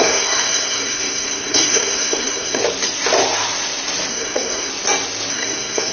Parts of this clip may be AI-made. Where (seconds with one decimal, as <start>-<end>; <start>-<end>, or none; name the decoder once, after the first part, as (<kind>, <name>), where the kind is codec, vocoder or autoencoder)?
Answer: 0.0-2.6 (codec, SNAC); 4.1-4.7; 5.3-5.9